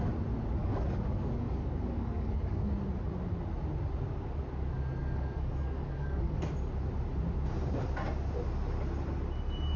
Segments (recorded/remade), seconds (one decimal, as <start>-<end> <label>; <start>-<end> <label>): 0.0-0.6 recorded; 0.6-2.7 remade; 2.7-5.0 recorded; 5.0-6.4 remade; 6.4-9.8 recorded